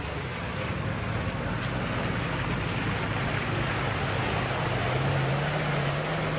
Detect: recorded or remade recorded